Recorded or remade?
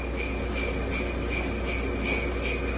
recorded